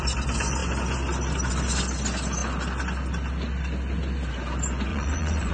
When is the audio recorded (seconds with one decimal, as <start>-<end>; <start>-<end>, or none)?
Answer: 0.0-4.9